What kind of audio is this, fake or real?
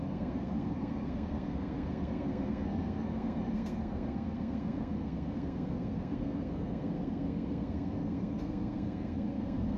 fake